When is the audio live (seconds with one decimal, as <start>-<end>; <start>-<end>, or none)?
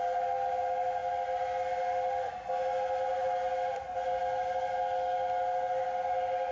0.0-6.5